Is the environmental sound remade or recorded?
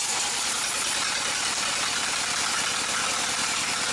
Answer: recorded